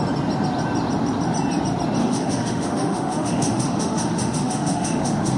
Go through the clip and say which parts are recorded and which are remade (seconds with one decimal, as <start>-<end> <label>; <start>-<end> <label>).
0.0-2.0 recorded; 2.0-5.4 remade

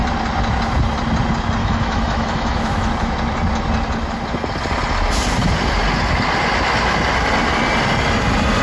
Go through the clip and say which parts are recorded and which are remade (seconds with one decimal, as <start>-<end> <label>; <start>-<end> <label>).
0.0-1.6 recorded; 1.6-2.9 remade; 2.9-8.6 recorded

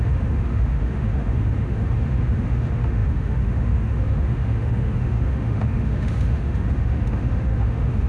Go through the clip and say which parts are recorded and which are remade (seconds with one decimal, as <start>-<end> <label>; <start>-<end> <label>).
0.0-8.1 remade

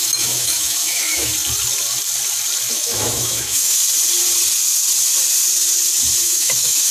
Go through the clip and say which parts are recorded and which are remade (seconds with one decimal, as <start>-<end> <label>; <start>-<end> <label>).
0.0-1.3 remade; 1.3-2.7 recorded; 2.7-3.8 remade; 3.8-6.2 recorded; 6.2-6.9 remade

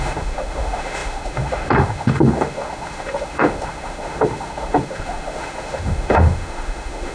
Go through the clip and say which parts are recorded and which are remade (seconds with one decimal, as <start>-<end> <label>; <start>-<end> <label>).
0.0-7.1 remade

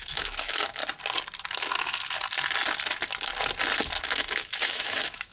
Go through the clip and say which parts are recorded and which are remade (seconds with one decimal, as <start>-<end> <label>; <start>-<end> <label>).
0.0-0.8 remade; 0.8-4.0 recorded; 4.0-5.3 remade

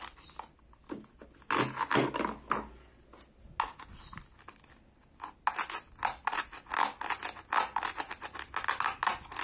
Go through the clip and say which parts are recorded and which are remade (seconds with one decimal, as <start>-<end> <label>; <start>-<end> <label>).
0.0-9.4 recorded